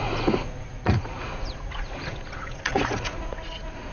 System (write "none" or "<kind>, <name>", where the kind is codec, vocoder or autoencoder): vocoder, Vocos